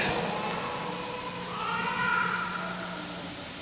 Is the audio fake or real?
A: real